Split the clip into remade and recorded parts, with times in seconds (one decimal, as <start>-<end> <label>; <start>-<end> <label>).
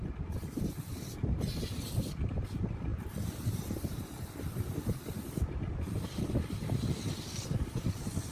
0.0-8.3 recorded